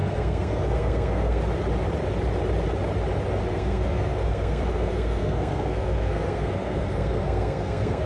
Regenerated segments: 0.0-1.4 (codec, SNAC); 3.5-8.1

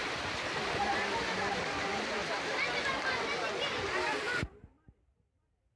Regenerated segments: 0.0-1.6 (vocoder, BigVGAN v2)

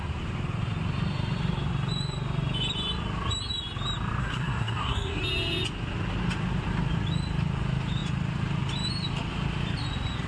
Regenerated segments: 4.2-5.2 (codec, SNAC)